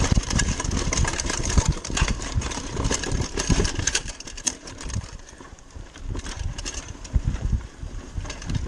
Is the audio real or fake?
fake